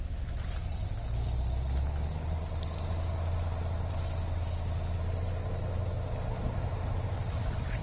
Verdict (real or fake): real